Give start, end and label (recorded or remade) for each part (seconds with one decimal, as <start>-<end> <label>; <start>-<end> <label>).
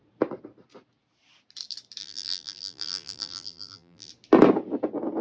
0.0-2.0 recorded; 2.0-4.1 remade; 4.1-5.2 recorded